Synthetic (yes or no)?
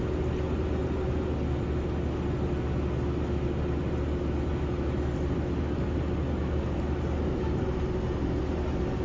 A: no